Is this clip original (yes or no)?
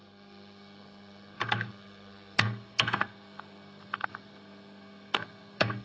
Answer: no